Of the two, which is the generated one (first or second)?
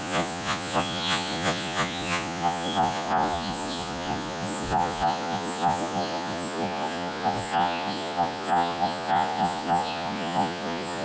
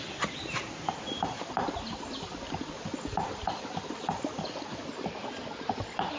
first